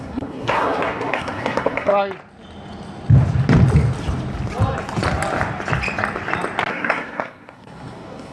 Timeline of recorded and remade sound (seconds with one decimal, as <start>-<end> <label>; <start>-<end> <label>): 0.0-1.9 remade; 1.9-6.7 recorded; 6.7-8.3 remade